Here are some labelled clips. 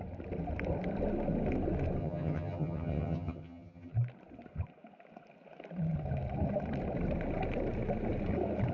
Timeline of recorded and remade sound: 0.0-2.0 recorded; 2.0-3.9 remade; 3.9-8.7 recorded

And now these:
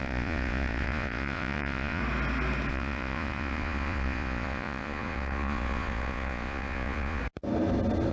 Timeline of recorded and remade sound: 0.0-2.0 remade; 2.0-2.7 recorded; 2.7-7.2 remade; 7.2-8.1 recorded

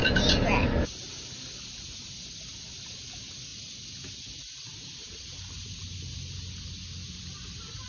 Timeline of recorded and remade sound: 0.0-7.9 recorded

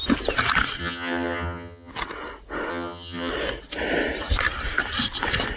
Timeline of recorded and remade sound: 0.0-0.8 recorded; 0.8-1.9 remade; 1.9-2.7 recorded; 2.7-3.3 remade; 3.3-5.6 recorded

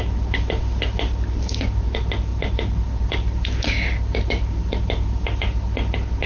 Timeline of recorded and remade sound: 0.0-6.3 recorded

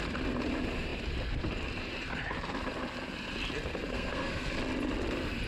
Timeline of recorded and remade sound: 0.0-3.9 recorded; 3.9-4.5 remade; 4.5-5.5 recorded